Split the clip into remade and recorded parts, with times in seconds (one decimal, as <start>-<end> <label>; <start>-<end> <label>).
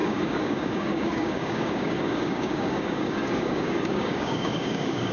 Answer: 0.0-5.1 remade